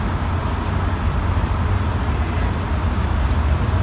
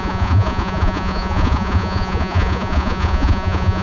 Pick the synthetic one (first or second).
second